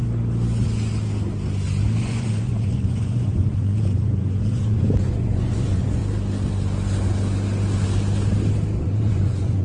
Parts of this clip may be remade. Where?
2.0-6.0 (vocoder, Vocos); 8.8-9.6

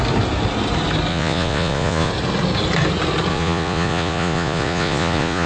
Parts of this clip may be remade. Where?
1.1-2.1 (vocoder, Vocos); 3.3-5.5